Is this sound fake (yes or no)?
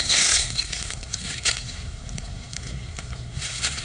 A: yes